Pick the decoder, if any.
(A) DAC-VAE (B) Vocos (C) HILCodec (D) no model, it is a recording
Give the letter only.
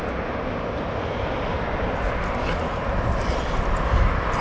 D